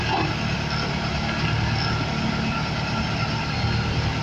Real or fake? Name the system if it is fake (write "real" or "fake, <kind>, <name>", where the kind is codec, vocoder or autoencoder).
real